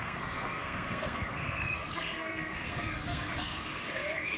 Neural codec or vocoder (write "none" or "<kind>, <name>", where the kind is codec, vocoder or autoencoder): codec, SNAC